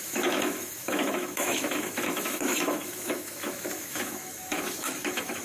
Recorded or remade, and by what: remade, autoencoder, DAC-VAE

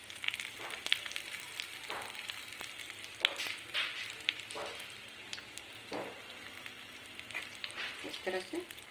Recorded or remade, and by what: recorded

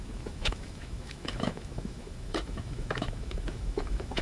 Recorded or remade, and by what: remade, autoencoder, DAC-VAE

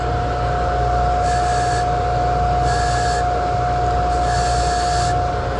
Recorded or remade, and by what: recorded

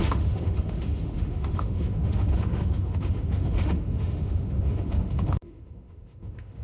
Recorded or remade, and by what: remade, autoencoder, DAC-VAE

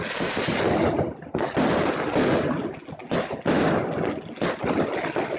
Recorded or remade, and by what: recorded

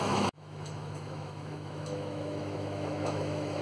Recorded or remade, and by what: remade, autoencoder, DAC-VAE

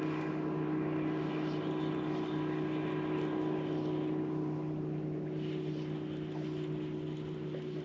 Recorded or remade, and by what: recorded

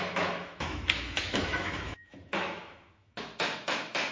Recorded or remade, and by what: remade, autoencoder, DAC-VAE